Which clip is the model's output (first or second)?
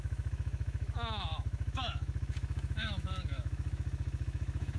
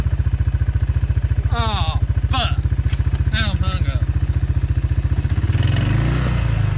first